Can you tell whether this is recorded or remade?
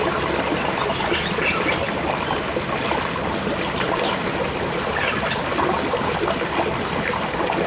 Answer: recorded